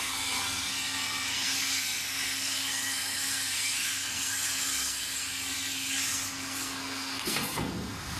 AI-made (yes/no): yes